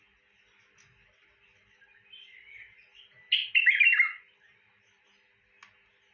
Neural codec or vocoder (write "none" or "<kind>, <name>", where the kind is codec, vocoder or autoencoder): none